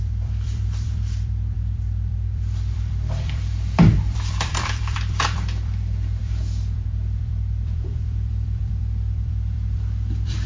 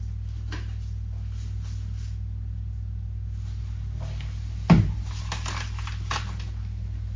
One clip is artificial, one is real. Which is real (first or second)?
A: second